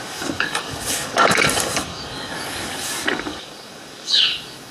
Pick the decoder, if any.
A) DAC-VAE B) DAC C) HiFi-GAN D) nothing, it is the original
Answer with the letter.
B